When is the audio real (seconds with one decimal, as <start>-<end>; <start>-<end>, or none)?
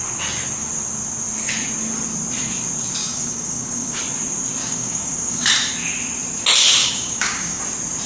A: 0.0-3.0; 4.0-4.6; 5.5-6.8; 7.6-8.1